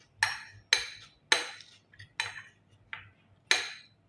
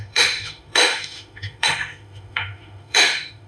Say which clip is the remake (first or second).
second